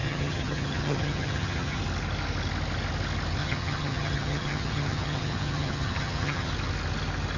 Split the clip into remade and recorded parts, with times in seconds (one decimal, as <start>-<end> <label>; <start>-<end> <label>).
0.0-1.8 remade; 1.8-3.4 recorded; 3.4-6.5 remade; 6.5-7.4 recorded